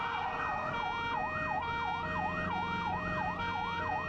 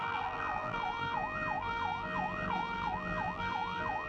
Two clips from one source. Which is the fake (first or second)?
second